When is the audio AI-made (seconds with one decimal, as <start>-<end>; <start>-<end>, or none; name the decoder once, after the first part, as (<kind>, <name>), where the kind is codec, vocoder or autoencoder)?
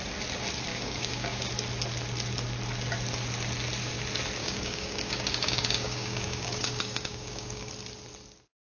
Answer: 0.7-1.5 (codec, DAC); 4.4-7.7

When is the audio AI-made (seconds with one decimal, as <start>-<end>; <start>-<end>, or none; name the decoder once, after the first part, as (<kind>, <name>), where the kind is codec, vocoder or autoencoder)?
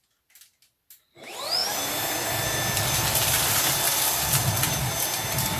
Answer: none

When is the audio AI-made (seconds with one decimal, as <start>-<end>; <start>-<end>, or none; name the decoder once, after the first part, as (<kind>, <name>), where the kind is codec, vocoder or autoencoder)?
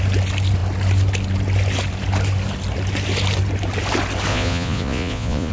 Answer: 4.3-5.5 (vocoder, Vocos)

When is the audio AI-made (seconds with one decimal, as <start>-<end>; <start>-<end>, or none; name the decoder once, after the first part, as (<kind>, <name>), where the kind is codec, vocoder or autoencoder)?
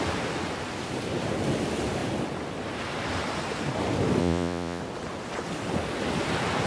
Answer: 4.2-4.8 (vocoder, Vocos)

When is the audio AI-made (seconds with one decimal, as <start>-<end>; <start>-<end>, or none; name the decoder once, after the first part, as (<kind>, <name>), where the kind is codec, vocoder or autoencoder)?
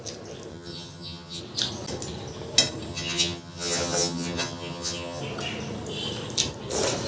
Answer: 0.5-1.4 (vocoder, HiFi-GAN); 2.9-5.2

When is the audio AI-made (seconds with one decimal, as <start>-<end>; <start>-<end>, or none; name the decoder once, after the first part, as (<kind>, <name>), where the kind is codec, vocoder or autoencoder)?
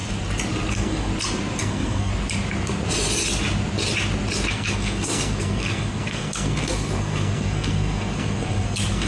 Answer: 0.7-1.1 (codec, SNAC); 1.6-2.1; 4.5-9.1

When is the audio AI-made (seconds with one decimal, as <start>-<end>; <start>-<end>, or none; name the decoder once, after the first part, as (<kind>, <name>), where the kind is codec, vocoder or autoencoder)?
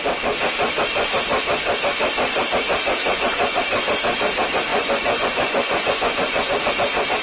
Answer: 3.0-3.6 (vocoder, Vocos); 4.7-6.7